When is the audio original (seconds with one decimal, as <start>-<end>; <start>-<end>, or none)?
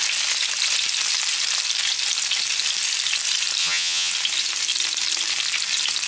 0.0-3.6; 4.1-6.1